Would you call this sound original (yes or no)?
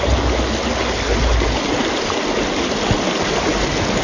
yes